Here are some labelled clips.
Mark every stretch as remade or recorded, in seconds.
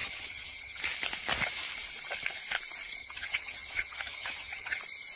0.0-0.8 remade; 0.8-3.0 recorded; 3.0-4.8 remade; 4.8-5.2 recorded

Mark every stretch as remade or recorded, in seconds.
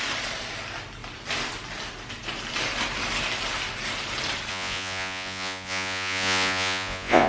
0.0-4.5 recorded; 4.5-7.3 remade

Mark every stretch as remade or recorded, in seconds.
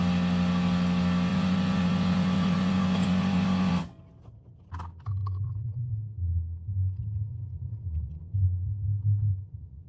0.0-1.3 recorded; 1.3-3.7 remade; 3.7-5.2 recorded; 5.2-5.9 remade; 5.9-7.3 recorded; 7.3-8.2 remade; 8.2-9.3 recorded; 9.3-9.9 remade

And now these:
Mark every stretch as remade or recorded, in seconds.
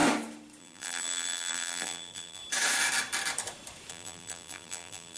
0.0-0.6 recorded; 0.6-2.4 remade; 2.4-3.9 recorded; 3.9-5.2 remade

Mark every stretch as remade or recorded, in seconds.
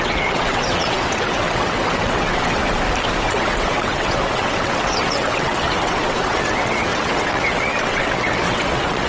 0.0-2.6 remade; 2.6-3.2 recorded; 3.2-9.1 remade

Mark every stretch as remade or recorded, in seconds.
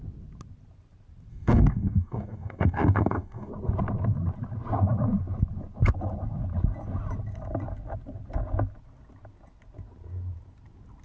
0.0-1.3 recorded; 1.3-3.5 remade; 3.5-11.0 recorded